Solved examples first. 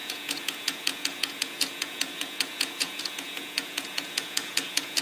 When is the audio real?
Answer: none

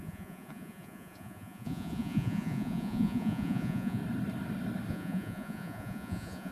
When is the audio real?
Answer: 4.0-4.9

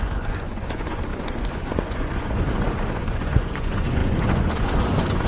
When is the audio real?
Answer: none

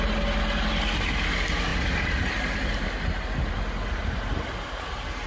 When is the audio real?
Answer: 0.0-5.3